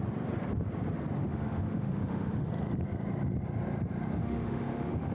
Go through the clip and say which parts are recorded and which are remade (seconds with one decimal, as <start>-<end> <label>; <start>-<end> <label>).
0.0-1.2 recorded; 1.2-2.5 remade; 2.5-4.2 recorded; 4.2-5.1 remade